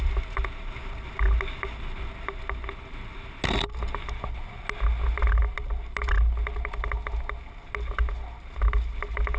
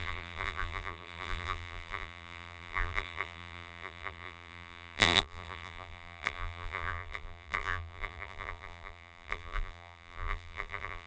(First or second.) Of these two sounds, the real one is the first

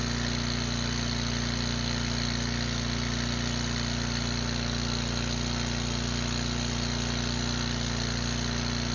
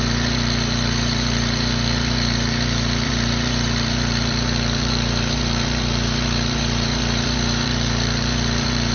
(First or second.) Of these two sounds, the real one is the first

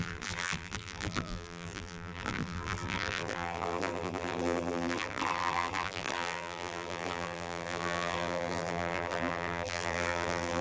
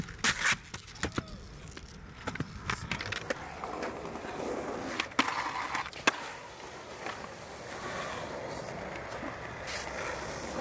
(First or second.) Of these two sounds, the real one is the second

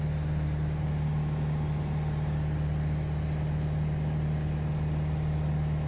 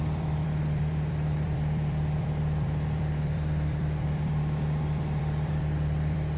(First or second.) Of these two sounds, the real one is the first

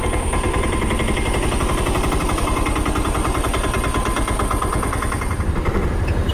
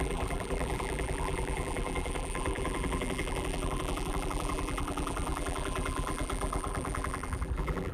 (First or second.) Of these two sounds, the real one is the first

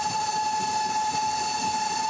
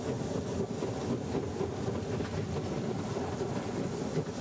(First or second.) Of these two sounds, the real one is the second